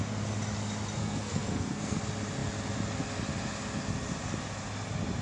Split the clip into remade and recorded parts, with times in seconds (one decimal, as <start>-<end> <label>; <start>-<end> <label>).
0.0-1.0 recorded; 1.0-2.0 remade; 2.0-5.2 recorded